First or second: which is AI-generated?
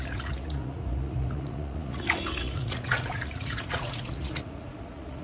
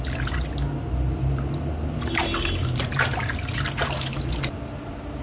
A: first